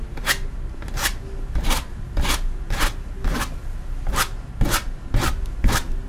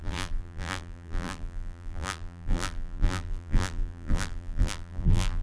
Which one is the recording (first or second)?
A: first